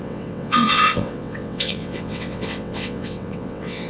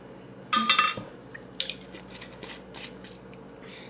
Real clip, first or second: second